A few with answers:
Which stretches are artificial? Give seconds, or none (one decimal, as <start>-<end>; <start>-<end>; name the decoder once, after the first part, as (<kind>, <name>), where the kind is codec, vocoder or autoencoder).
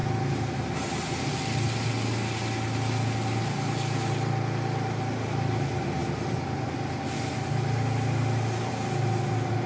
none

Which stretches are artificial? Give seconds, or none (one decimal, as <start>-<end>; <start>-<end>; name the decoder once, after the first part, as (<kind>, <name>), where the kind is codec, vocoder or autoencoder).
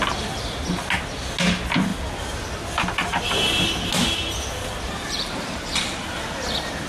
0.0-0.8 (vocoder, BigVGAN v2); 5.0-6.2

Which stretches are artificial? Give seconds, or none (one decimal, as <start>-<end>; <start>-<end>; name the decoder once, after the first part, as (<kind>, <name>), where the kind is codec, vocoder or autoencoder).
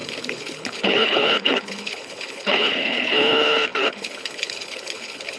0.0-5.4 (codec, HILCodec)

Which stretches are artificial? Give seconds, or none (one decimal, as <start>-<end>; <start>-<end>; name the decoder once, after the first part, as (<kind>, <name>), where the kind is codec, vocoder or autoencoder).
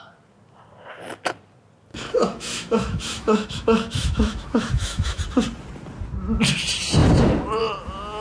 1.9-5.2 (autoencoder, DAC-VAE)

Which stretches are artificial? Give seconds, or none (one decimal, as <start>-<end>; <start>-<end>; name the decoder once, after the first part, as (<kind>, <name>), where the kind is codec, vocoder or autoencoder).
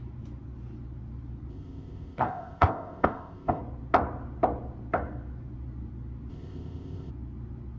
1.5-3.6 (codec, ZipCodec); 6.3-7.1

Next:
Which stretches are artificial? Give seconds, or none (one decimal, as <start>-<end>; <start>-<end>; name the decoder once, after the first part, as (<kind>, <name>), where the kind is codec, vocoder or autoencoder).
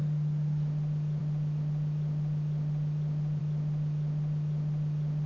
none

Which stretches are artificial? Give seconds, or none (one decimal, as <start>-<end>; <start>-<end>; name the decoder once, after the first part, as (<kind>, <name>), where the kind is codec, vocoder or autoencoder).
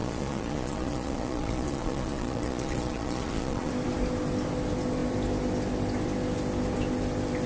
0.0-3.7 (vocoder, Vocos)